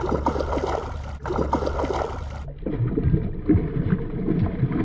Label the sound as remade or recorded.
recorded